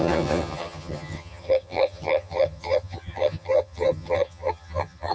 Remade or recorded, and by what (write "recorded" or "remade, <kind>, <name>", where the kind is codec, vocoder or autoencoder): remade, vocoder, HiFi-GAN